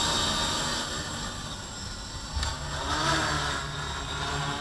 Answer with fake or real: real